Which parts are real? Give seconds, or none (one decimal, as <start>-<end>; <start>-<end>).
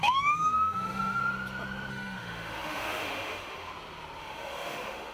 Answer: 1.2-1.9; 3.7-4.2